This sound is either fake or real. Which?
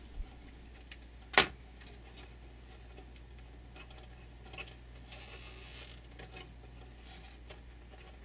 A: real